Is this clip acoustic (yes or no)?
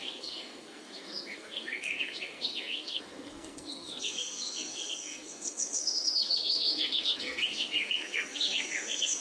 no